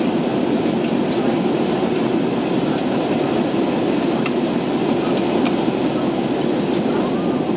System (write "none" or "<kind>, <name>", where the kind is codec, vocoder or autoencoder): none